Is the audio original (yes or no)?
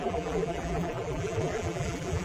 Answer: no